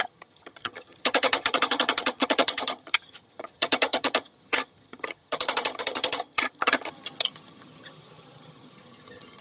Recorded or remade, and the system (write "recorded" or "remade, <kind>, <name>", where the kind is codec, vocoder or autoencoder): remade, vocoder, HiFi-GAN